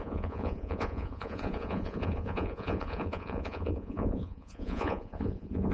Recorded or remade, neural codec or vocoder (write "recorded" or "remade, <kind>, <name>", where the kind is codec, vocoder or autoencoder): remade, vocoder, Vocos